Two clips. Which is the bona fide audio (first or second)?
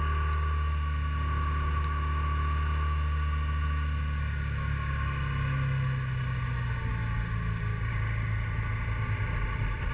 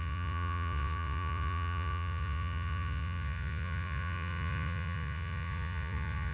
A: first